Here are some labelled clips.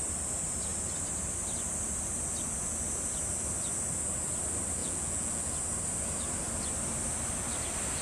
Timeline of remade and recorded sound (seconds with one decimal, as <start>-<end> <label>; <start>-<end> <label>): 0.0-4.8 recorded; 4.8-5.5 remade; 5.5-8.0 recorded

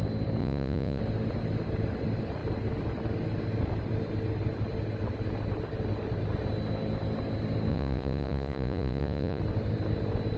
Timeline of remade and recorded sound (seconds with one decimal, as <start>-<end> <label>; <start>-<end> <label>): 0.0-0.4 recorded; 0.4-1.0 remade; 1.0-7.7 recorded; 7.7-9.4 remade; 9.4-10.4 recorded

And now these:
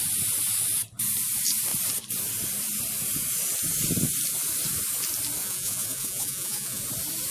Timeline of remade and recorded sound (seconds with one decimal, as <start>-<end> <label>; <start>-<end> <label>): 0.0-5.4 recorded; 5.4-6.8 remade; 6.8-7.3 recorded

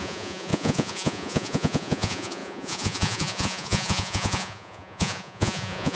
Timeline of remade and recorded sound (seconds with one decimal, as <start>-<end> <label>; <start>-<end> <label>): 0.0-6.0 remade

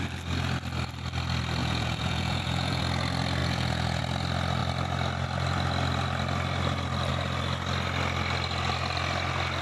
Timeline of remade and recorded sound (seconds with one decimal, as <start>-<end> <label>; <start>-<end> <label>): 0.0-1.6 recorded; 1.6-2.8 remade; 2.8-3.4 recorded; 3.4-4.0 remade; 4.0-9.6 recorded

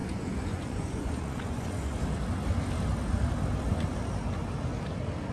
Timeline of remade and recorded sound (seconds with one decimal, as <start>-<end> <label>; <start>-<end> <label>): 0.0-2.0 remade; 2.0-5.3 recorded

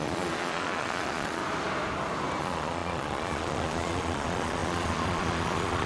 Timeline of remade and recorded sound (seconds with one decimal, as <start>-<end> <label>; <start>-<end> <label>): 0.0-1.4 remade; 1.4-2.4 recorded; 2.4-5.9 remade

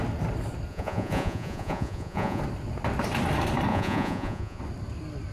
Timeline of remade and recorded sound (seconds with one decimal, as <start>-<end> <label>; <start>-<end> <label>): 0.0-0.7 recorded; 0.7-2.4 remade; 2.4-3.7 recorded; 3.7-4.6 remade; 4.6-5.3 recorded